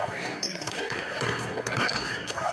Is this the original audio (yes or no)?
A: no